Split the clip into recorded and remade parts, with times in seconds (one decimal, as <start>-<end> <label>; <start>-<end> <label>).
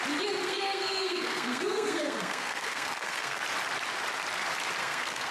0.0-0.4 recorded; 0.4-3.4 remade; 3.4-4.8 recorded; 4.8-5.3 remade